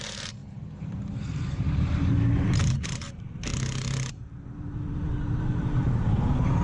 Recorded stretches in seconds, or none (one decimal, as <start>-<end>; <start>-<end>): 3.5-4.1